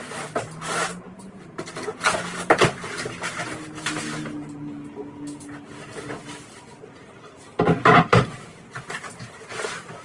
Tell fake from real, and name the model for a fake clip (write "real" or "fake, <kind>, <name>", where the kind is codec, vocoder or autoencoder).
real